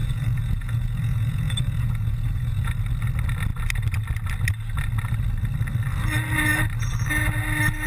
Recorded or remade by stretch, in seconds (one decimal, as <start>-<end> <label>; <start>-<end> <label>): 0.0-2.7 remade; 2.7-7.9 recorded